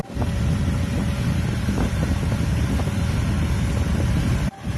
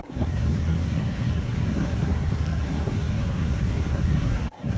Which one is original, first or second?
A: first